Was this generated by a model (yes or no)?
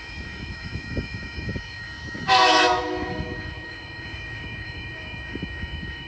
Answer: yes